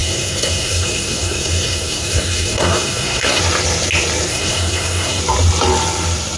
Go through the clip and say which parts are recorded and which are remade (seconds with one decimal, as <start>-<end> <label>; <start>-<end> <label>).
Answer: 0.0-3.4 remade; 3.4-4.3 recorded; 4.3-5.2 remade; 5.2-6.4 recorded